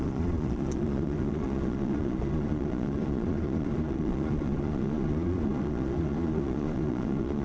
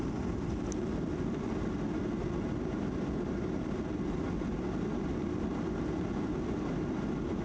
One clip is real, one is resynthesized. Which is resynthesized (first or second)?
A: first